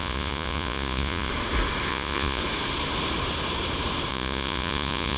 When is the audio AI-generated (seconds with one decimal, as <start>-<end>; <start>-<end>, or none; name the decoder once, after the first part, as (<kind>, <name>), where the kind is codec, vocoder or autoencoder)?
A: 0.0-1.3 (vocoder, Vocos); 1.9-2.4; 4.1-5.2